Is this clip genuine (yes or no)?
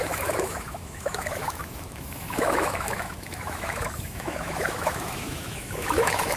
no